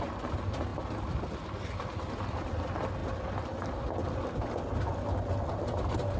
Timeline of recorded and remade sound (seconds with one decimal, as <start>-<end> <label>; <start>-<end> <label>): 0.0-6.2 recorded